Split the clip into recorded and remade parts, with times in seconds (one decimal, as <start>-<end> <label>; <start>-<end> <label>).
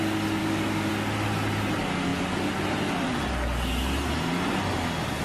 0.0-0.4 recorded; 0.4-0.9 remade; 0.9-5.2 recorded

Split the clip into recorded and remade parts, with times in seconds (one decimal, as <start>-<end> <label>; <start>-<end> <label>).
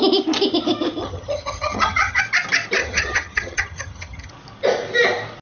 0.0-1.0 recorded; 1.0-2.2 remade; 2.2-2.8 recorded; 2.8-4.3 remade; 4.3-5.4 recorded